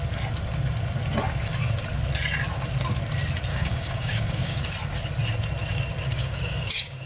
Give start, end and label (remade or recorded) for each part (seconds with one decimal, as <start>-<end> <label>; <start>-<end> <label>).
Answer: 0.0-3.5 recorded; 3.5-4.6 remade; 4.6-6.1 recorded; 6.1-7.1 remade